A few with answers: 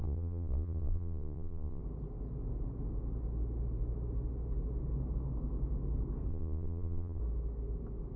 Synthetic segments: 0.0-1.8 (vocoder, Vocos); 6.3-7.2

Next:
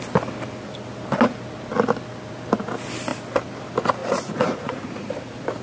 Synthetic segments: 4.0-5.1 (vocoder, Vocos)

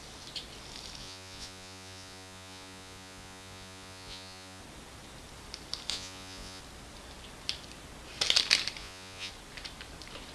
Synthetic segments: 1.0-4.6 (vocoder, Vocos); 5.9-6.6; 8.8-9.3

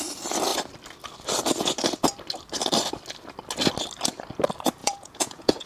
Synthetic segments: 4.8-5.7 (vocoder, Vocos)

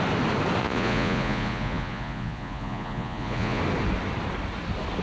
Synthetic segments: 0.6-3.6 (vocoder, Vocos)

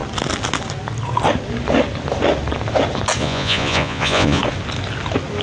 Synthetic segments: 3.2-4.4 (vocoder, Vocos)

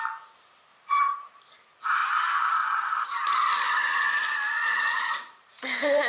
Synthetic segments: 0.7-1.4 (vocoder, Vocos); 4.7-6.1